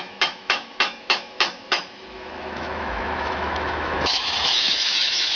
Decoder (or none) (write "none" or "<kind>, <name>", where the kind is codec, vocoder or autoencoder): autoencoder, DAC-VAE